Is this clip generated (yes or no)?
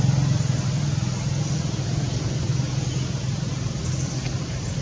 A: no